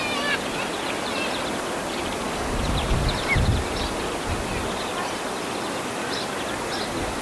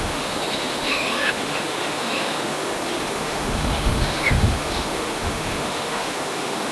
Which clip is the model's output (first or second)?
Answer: second